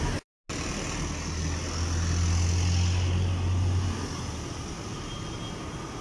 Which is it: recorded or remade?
recorded